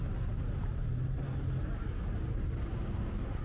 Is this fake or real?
real